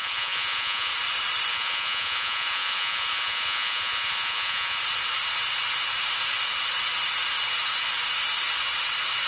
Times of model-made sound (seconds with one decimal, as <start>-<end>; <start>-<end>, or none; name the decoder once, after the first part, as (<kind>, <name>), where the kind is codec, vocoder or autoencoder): 0.0-0.9 (vocoder, Vocos); 1.5-4.8